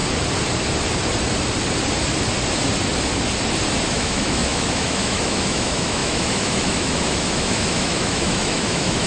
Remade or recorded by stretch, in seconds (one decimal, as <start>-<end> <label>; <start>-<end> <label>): 0.0-3.9 recorded; 3.9-9.1 remade